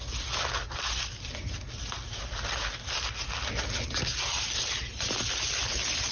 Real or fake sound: real